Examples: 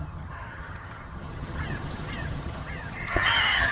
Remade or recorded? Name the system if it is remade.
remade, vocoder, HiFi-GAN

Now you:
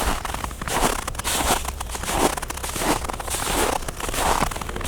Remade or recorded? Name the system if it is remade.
recorded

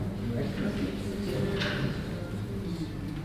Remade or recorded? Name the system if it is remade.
recorded